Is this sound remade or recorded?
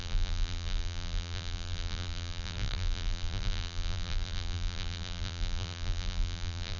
remade